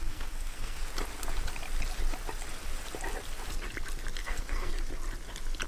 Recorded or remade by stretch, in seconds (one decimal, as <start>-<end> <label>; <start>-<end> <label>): 0.0-0.9 remade; 0.9-4.2 recorded; 4.2-4.7 remade; 4.7-5.7 recorded